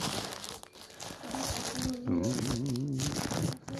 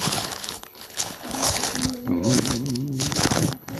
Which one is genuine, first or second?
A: first